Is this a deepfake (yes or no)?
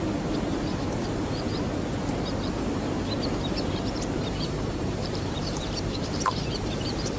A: yes